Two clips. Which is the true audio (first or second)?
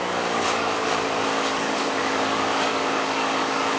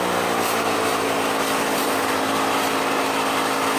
second